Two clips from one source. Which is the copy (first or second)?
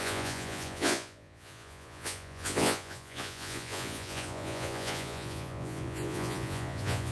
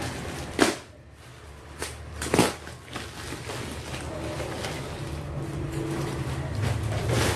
first